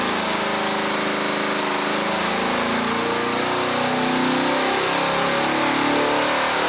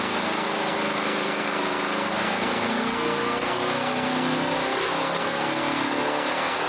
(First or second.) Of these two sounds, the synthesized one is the second